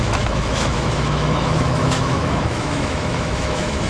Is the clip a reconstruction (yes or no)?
yes